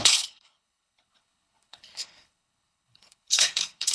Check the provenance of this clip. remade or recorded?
remade